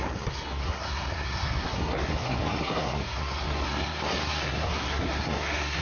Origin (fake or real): fake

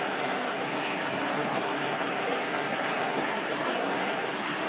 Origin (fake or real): fake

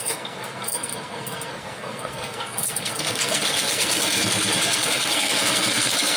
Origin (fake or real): fake